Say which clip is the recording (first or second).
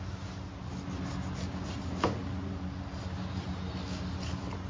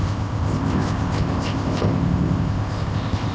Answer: first